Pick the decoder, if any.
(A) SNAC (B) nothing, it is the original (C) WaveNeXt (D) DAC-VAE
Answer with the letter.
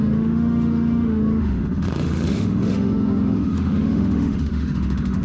D